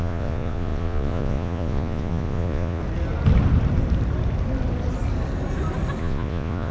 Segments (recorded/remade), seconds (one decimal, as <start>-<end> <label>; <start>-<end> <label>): 0.0-2.8 remade; 2.8-6.0 recorded; 6.0-6.7 remade